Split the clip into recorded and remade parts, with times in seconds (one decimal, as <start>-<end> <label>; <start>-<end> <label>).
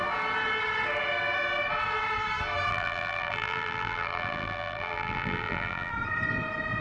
0.0-2.7 recorded; 2.7-5.9 remade; 5.9-6.8 recorded